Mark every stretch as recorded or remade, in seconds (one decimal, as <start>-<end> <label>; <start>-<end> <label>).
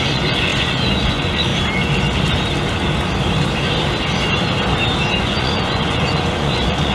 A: 0.0-1.5 remade; 1.5-5.2 recorded; 5.2-6.9 remade